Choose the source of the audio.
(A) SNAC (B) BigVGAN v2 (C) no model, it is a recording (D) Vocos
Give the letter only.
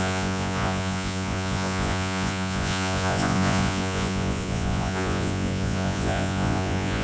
D